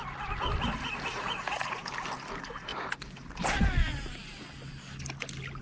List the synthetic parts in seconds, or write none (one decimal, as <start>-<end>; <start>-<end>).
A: 1.1-1.8